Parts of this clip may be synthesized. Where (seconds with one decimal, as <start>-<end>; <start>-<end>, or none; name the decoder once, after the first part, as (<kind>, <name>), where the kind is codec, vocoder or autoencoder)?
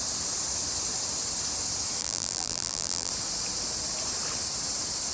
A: 2.0-3.1 (vocoder, BigVGAN v2)